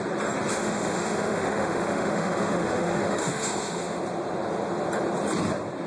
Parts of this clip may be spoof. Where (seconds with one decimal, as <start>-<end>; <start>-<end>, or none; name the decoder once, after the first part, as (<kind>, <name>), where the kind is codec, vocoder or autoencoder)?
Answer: 0.5-4.0 (autoencoder, DAC-VAE)